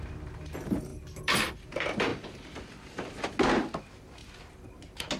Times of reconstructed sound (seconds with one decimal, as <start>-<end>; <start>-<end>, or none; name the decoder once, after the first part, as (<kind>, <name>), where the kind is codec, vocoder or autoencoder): 2.1-3.1 (vocoder, BigVGAN v2)